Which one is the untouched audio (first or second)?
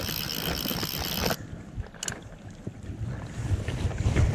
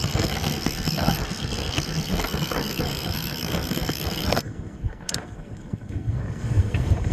first